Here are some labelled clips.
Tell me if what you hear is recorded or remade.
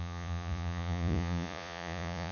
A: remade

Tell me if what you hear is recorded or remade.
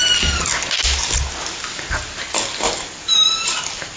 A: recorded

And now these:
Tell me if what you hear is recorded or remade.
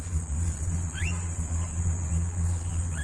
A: remade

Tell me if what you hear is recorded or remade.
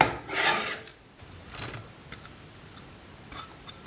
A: recorded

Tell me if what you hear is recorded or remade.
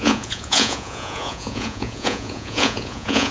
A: remade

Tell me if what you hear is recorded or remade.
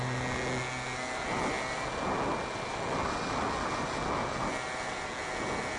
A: recorded